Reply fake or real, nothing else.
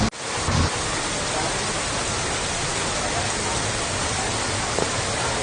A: real